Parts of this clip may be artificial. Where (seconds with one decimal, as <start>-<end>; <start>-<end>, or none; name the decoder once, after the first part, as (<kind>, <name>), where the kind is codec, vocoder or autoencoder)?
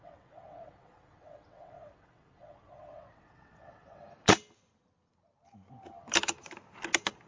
0.0-4.0 (vocoder, WaveNeXt)